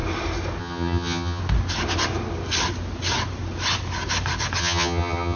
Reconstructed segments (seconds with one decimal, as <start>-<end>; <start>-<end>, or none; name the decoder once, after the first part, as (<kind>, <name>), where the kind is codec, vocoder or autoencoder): 0.6-1.4 (vocoder, HiFi-GAN); 4.6-5.4